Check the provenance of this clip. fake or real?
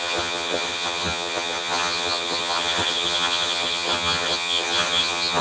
fake